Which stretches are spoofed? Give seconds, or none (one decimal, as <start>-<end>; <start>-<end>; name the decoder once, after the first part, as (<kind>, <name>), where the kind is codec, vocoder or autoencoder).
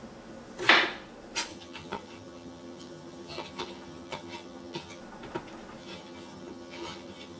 1.5-5.0 (vocoder, HiFi-GAN); 5.8-7.4